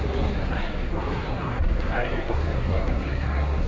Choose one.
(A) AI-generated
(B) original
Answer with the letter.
A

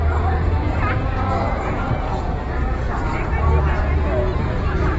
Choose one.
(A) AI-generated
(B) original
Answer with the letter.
A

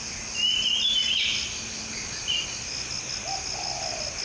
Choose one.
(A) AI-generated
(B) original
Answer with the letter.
B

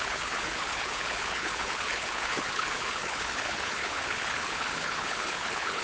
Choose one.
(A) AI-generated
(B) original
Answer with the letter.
A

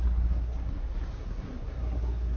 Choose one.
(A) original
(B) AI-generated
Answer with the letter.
B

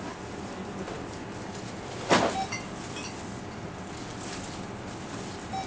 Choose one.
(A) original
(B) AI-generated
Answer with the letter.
A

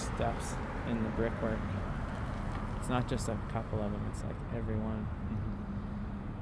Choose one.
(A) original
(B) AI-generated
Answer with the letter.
A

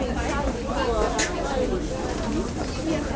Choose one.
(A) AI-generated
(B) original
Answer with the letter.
B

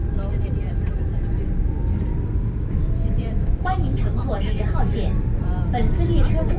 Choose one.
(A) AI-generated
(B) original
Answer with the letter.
A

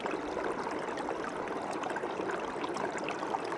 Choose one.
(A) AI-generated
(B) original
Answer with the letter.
B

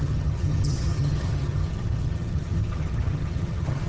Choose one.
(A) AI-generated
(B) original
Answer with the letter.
A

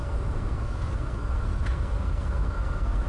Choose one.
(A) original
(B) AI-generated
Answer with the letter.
B